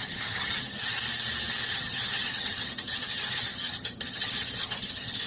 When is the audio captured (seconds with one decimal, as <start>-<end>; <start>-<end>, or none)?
1.0-1.7